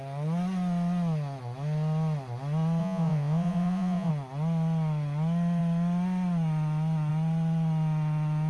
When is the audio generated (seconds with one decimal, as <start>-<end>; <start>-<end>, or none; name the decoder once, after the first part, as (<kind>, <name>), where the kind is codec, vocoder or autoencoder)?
2.8-4.1 (vocoder, Vocos)